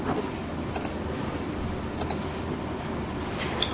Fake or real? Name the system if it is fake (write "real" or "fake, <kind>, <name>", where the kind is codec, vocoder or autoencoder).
real